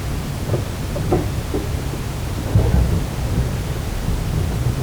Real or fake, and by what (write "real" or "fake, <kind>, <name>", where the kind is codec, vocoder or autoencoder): real